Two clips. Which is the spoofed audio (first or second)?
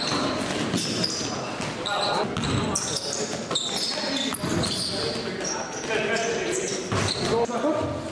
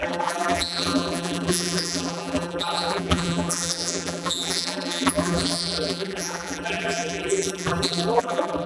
second